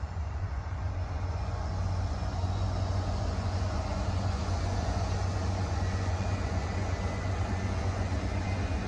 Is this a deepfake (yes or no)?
yes